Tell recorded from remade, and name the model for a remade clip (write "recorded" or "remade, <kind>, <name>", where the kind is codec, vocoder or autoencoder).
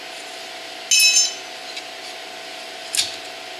recorded